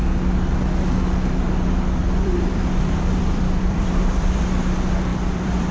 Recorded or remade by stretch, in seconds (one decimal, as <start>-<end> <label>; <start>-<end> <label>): 0.0-2.0 recorded; 2.0-4.4 remade; 4.4-5.1 recorded; 5.1-5.7 remade